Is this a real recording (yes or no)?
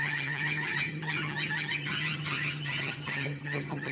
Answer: no